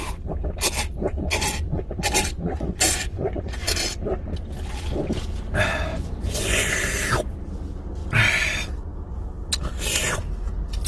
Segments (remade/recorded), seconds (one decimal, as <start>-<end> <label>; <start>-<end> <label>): 0.0-1.1 recorded; 1.1-3.7 remade; 3.7-5.9 recorded; 5.9-6.7 remade; 6.7-10.9 recorded

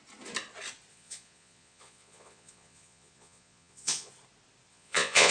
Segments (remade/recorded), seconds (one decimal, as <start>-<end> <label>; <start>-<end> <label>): 0.0-0.9 recorded; 0.9-4.1 remade; 4.1-4.7 recorded; 4.7-5.3 remade

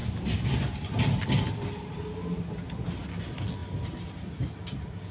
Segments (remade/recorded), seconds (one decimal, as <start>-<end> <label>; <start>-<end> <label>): 0.0-5.1 recorded

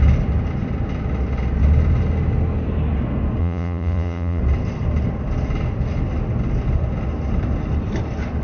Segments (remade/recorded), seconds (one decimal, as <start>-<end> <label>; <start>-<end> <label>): 0.0-3.4 recorded; 3.4-4.4 remade; 4.4-8.4 recorded

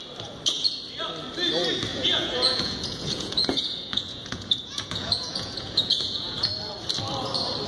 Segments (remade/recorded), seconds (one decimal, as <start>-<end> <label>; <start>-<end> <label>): 0.0-1.9 recorded; 1.9-6.5 remade; 6.5-7.7 recorded

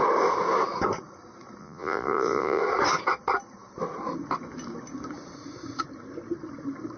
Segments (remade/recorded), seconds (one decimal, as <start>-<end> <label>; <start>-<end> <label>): 0.0-1.6 recorded; 1.6-2.6 remade; 2.6-7.0 recorded